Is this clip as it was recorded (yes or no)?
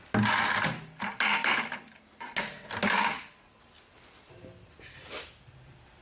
yes